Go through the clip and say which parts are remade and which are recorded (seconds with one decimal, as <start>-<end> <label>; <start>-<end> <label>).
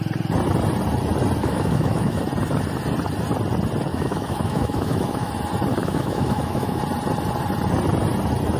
0.0-1.4 recorded; 1.4-2.2 remade; 2.2-3.9 recorded; 3.9-5.3 remade; 5.3-5.8 recorded; 5.8-6.8 remade; 6.8-8.6 recorded